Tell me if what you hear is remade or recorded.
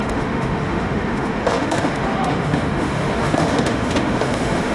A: remade